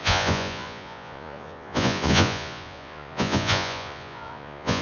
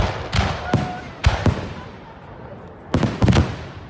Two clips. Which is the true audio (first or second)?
second